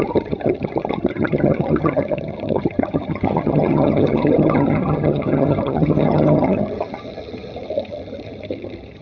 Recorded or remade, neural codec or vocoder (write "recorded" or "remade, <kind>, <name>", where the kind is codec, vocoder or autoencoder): remade, vocoder, HiFi-GAN